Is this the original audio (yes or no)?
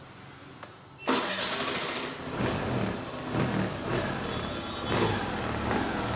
yes